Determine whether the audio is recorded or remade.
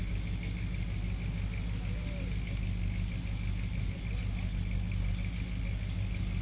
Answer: recorded